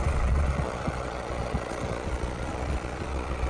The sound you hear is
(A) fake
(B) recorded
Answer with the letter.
A